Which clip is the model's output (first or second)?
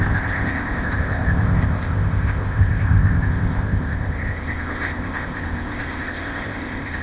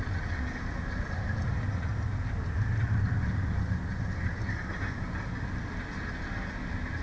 first